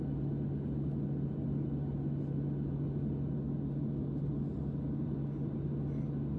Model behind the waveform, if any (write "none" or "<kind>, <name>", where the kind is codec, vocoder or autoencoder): none